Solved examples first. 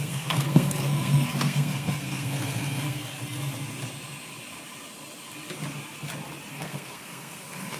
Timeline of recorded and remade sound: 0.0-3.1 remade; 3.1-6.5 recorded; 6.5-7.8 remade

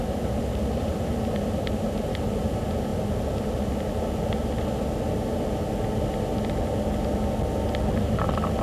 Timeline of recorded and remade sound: 0.0-8.6 recorded

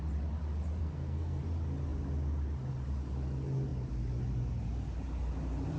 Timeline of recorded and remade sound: 0.0-0.8 recorded; 0.8-1.4 remade; 1.4-5.8 recorded

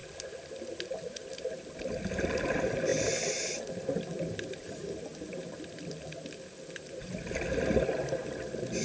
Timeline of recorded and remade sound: 0.0-8.8 recorded

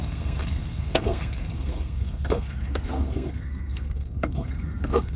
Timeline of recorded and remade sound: 0.0-5.2 remade

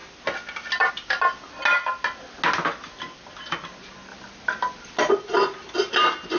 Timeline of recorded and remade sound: 0.0-6.4 recorded